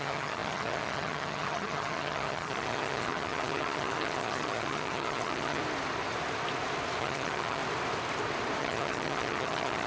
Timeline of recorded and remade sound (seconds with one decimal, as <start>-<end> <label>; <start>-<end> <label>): 0.0-5.6 remade; 5.6-7.0 recorded; 7.0-7.6 remade; 7.6-8.6 recorded; 8.6-9.9 remade